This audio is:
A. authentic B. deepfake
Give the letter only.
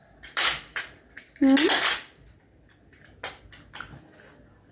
A